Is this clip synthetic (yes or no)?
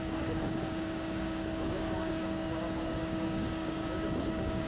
yes